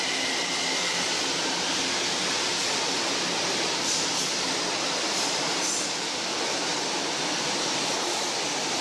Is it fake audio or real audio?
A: real